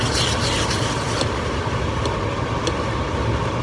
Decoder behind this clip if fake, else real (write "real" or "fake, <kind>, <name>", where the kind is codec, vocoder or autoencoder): real